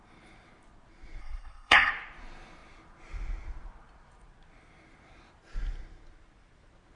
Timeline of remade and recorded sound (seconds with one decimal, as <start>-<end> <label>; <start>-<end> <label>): 0.0-1.2 recorded; 1.2-1.9 remade; 1.9-7.0 recorded

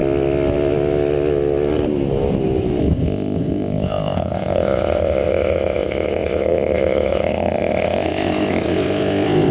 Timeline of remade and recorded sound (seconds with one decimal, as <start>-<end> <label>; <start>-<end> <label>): 0.0-2.8 recorded; 2.8-9.5 remade

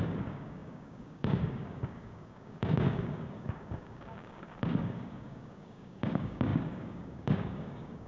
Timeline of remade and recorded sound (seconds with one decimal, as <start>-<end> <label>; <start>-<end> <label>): 0.0-8.1 remade

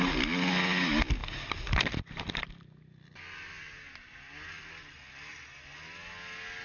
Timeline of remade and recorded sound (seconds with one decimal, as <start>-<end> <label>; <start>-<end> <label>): 0.0-6.6 recorded